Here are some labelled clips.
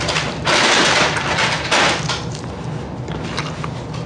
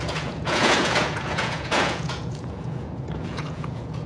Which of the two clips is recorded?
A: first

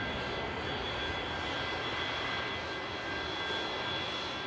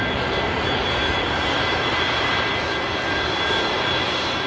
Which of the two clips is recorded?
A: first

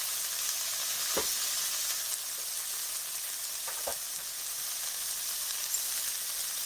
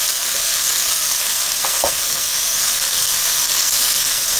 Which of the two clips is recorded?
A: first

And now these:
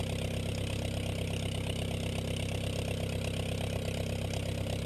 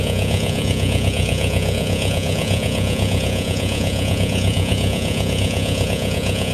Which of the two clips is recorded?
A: first